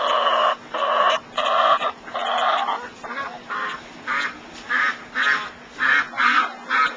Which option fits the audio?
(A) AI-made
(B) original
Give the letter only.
B